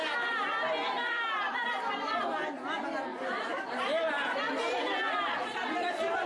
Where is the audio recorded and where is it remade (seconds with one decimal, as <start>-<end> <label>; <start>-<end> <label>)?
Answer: 0.0-1.0 recorded; 1.0-2.2 remade; 2.2-3.1 recorded; 3.1-6.3 remade